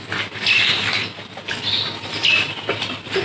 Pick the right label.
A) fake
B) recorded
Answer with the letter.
B